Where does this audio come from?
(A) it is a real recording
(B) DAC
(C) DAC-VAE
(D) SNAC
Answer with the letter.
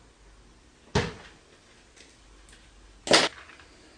A